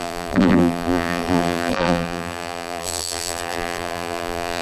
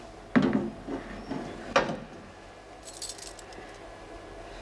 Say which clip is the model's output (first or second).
first